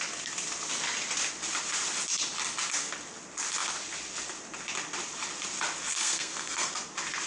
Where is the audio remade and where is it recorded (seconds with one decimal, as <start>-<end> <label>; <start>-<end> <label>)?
0.0-5.9 recorded; 5.9-6.7 remade; 6.7-7.3 recorded